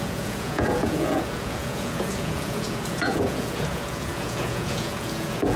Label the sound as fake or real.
fake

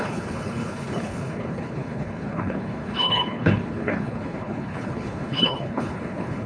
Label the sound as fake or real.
fake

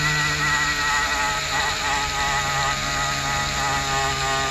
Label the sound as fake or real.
real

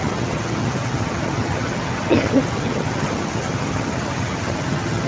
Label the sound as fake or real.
fake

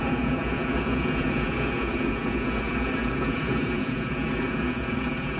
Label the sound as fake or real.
fake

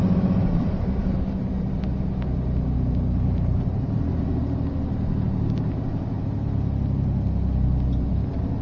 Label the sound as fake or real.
real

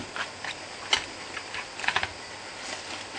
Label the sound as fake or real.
real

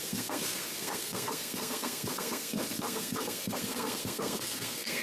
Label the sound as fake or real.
fake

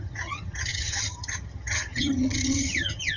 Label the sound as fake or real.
fake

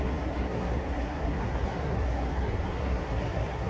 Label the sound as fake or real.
fake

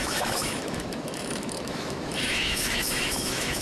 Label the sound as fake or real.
fake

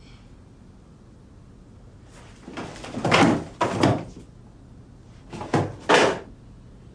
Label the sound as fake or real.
real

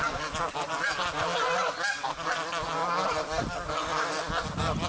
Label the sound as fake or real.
real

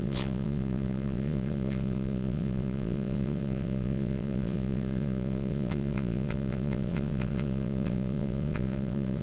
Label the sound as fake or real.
fake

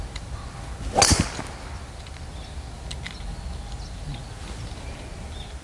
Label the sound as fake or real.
real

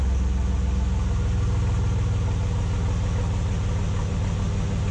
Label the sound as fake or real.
real